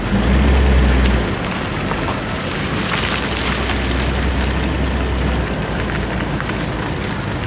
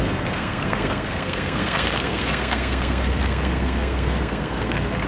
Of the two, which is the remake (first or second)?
second